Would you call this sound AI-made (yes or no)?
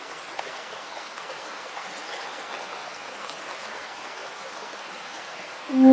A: yes